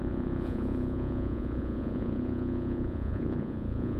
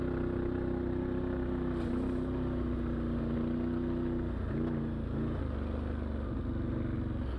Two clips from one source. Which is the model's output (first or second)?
first